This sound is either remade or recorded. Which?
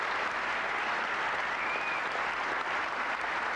recorded